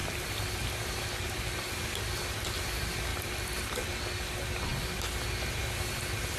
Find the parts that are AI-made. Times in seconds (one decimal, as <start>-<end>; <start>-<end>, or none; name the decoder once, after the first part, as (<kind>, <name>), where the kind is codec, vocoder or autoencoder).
0.0-6.4 (vocoder, BigVGAN v2)